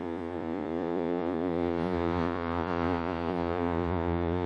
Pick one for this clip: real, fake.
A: fake